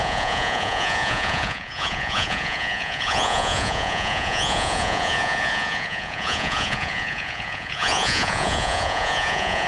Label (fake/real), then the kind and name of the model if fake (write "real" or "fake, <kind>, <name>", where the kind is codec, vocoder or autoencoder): fake, vocoder, Vocos